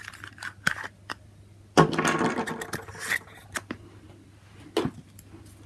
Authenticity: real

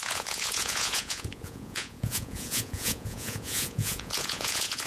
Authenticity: fake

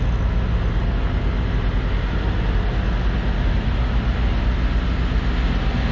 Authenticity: real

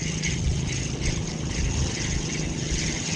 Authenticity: real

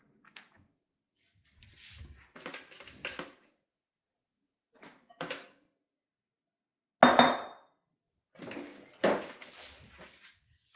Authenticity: real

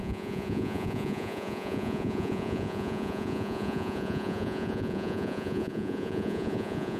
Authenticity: fake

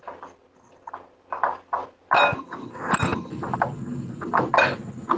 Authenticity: real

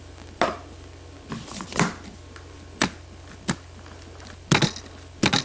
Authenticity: real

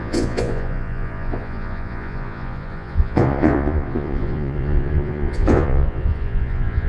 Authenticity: fake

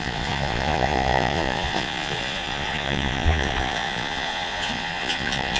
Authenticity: fake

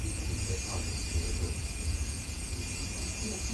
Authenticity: fake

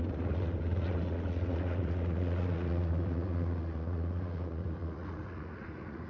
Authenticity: fake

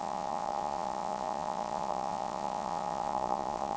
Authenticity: fake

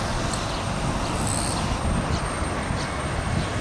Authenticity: real